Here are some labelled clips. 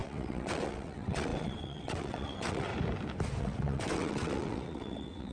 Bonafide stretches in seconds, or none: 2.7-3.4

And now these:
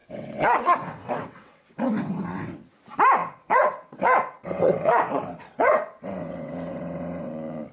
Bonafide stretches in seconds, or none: 2.7-3.2; 7.3-7.7

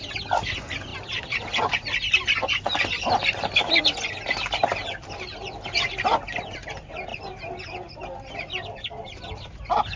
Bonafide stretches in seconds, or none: 0.0-10.0

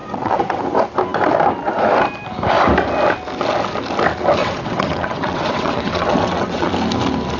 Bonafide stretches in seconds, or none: 0.6-4.4; 6.7-7.4

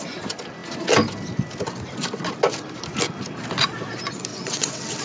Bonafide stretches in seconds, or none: 0.0-4.3

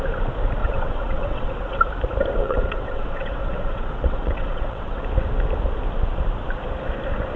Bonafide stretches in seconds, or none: 0.0-0.6; 1.8-2.4; 5.0-7.4